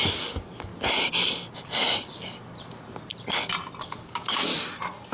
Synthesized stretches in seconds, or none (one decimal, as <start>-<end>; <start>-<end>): 0.0-0.7; 3.8-4.5